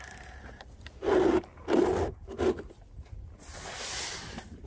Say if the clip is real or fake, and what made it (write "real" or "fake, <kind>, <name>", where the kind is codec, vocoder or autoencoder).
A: real